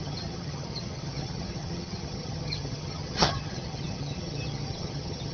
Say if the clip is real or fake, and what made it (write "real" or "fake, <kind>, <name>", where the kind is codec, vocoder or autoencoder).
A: fake, vocoder, HiFi-GAN